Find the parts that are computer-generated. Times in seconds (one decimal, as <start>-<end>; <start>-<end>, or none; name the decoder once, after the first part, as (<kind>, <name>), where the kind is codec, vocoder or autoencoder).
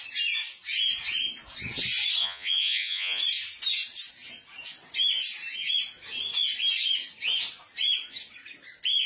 2.2-3.2 (vocoder, Vocos)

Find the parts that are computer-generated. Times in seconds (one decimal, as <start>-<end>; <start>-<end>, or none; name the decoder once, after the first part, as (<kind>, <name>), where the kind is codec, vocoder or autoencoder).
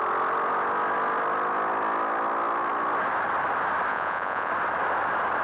3.9-4.5 (vocoder, Vocos)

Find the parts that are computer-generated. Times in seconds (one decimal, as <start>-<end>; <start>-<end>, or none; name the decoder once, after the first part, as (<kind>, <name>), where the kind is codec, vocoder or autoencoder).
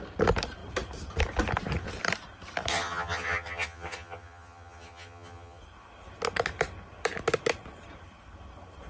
2.7-5.6 (vocoder, HiFi-GAN)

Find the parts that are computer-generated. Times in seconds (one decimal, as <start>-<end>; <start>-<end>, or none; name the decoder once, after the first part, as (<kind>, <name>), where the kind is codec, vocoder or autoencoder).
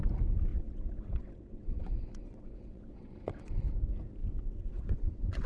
0.5-3.6 (vocoder, WaveNeXt); 4.2-5.5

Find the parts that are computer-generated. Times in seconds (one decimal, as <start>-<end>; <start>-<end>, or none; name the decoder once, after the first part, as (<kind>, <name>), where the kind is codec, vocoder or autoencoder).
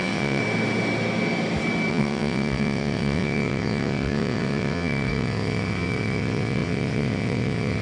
0.0-0.4 (vocoder, WaveNeXt); 1.9-7.8